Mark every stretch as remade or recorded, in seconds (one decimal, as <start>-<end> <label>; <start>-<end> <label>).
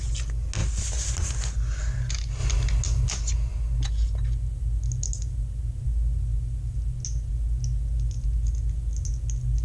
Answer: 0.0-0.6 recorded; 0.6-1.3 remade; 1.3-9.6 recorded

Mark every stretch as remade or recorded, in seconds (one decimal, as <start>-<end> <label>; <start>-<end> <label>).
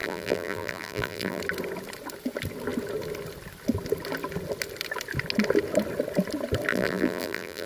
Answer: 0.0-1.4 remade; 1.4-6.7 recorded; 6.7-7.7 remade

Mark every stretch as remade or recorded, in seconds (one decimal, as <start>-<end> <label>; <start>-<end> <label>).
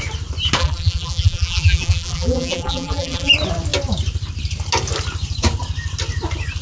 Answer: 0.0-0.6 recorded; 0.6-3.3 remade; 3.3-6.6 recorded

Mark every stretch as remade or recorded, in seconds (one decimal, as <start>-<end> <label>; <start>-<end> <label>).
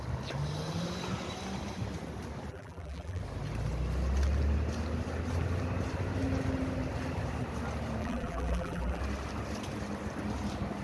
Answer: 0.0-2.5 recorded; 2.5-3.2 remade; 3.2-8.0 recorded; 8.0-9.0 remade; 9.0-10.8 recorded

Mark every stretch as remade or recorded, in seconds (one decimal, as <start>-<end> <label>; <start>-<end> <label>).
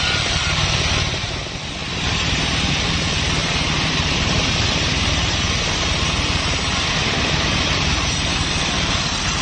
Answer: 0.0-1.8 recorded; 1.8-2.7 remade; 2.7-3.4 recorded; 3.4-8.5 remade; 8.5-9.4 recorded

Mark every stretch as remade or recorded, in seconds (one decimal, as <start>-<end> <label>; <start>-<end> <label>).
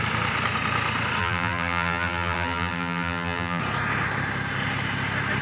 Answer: 0.0-1.2 recorded; 1.2-3.6 remade; 3.6-5.4 recorded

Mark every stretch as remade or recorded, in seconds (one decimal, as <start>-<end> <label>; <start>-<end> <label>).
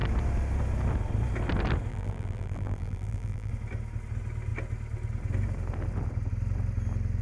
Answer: 0.0-1.9 recorded; 1.9-3.5 remade; 3.5-7.2 recorded